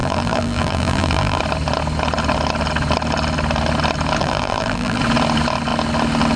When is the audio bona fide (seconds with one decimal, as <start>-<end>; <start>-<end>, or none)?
1.4-4.2; 5.0-6.4